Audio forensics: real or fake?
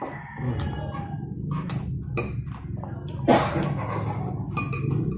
real